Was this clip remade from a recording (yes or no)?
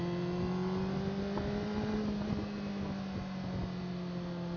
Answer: no